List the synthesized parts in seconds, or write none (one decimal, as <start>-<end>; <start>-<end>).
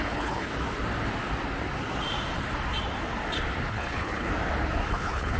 0.0-0.5; 3.7-4.3; 4.9-5.4